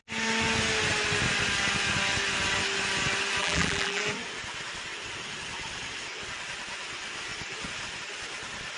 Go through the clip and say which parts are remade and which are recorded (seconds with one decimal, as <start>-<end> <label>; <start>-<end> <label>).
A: 0.0-3.4 recorded; 3.4-4.0 remade; 4.0-8.8 recorded